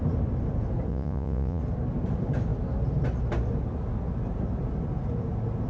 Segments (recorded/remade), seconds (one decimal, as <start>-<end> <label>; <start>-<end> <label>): 0.0-0.9 recorded; 0.9-1.6 remade; 1.6-5.7 recorded